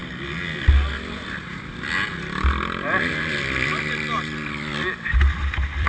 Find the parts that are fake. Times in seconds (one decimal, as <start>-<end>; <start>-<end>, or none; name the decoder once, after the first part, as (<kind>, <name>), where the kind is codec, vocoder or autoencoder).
3.1-3.7 (vocoder, BigVGAN v2); 5.2-5.9